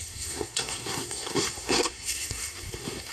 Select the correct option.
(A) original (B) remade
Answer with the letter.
B